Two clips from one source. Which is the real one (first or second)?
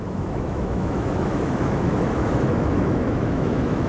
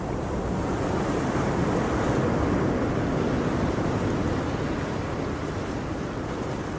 second